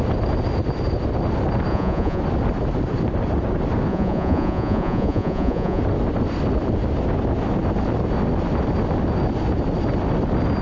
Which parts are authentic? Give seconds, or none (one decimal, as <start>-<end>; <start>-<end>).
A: 0.0-1.7; 2.2-3.9; 5.8-10.6

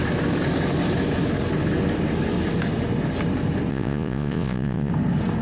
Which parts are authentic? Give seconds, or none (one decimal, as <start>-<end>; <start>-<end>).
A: 0.0-3.7; 4.9-5.4

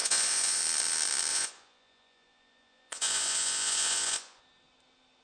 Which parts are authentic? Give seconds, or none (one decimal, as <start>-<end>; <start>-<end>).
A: 0.6-1.3; 4.4-5.2

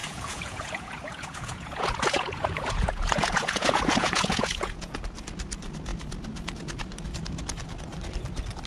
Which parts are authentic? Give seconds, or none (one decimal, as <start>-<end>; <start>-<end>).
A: 5.0-8.7

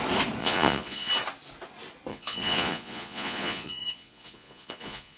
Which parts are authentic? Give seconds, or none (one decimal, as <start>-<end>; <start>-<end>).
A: 0.0-0.4; 1.1-2.1

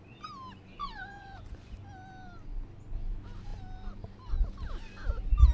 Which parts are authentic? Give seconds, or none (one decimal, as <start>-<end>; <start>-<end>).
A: 0.0-0.8; 1.8-5.5